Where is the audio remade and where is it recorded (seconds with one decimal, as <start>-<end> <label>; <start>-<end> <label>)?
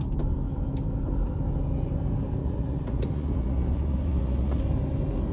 0.0-2.4 recorded; 2.4-4.6 remade; 4.6-5.3 recorded